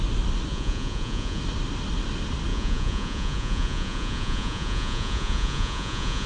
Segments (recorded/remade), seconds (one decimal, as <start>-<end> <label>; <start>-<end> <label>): 0.0-0.5 recorded; 0.5-1.4 remade; 1.4-2.5 recorded; 2.5-6.3 remade